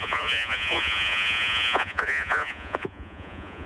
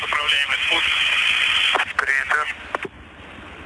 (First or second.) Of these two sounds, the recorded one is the second